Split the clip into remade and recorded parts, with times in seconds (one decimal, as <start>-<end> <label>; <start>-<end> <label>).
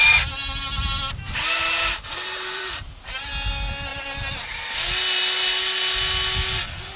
0.0-1.6 recorded; 1.6-3.5 remade; 3.5-3.9 recorded; 3.9-4.7 remade; 4.7-7.0 recorded